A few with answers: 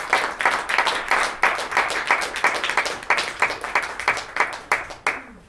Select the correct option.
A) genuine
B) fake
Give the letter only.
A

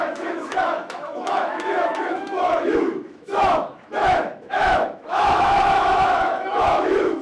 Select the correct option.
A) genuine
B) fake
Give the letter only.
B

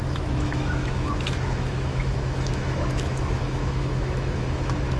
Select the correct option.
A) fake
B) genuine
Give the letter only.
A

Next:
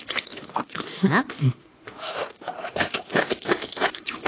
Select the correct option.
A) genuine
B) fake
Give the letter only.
B